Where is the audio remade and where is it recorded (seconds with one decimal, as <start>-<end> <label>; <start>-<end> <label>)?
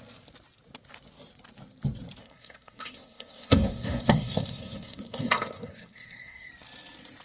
0.0-2.2 recorded; 2.2-6.5 remade; 6.5-7.2 recorded